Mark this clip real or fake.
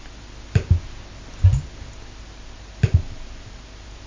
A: real